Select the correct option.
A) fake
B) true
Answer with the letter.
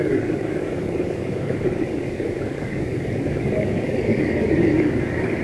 A